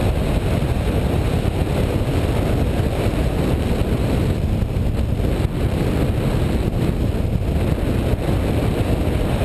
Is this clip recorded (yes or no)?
yes